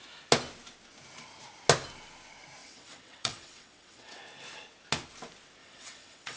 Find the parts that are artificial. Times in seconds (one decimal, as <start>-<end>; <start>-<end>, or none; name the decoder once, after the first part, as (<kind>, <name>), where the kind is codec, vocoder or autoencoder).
2.6-4.2 (vocoder, WaveNeXt); 5.6-6.4